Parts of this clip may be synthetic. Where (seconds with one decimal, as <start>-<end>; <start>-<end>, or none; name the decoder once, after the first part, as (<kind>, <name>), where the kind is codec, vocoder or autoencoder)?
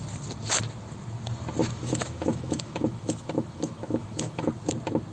1.6-4.5 (autoencoder, DAC-VAE)